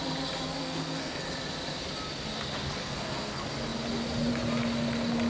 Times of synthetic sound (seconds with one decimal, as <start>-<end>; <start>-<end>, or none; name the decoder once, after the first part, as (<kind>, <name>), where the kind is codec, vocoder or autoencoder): 0.6-1.2 (codec, SNAC); 2.8-3.3